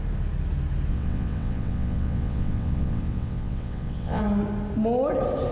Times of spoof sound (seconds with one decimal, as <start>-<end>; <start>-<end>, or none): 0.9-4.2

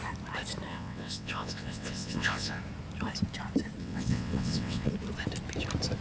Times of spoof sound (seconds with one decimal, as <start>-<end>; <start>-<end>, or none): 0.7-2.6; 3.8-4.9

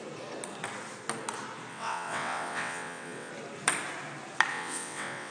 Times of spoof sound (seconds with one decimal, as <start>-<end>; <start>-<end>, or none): 1.7-3.3; 4.5-5.3